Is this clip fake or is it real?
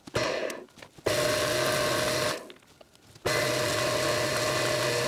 real